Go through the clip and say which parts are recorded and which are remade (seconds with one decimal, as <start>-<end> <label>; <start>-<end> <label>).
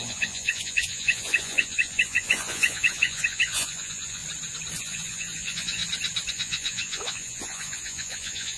0.0-4.2 remade; 4.2-4.8 recorded; 4.8-5.8 remade; 5.8-6.3 recorded; 6.3-8.6 remade